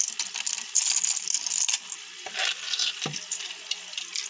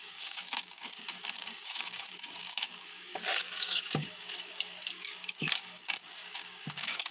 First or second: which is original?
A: first